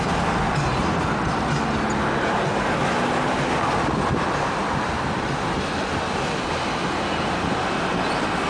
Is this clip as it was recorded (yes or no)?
yes